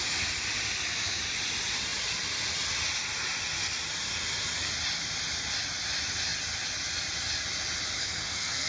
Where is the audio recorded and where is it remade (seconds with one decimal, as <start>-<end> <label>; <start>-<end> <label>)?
0.0-8.0 recorded; 8.0-8.7 remade